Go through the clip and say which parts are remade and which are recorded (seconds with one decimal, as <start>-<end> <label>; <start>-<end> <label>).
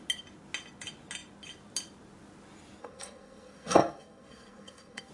0.0-2.8 recorded; 2.8-5.1 remade